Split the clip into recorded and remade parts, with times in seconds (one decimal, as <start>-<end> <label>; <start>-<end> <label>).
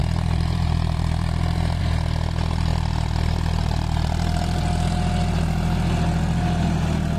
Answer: 0.0-1.8 remade; 1.8-2.7 recorded; 2.7-4.9 remade; 4.9-7.2 recorded